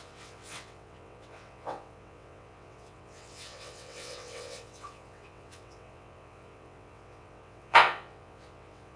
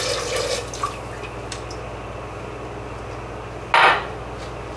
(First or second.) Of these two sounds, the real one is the second